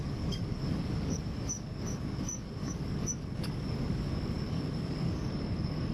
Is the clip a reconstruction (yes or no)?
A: yes